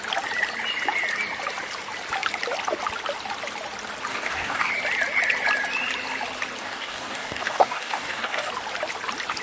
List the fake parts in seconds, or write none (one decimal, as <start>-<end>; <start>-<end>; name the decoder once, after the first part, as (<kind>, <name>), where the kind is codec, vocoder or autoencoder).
4.1-4.7 (codec, DAC); 6.6-8.5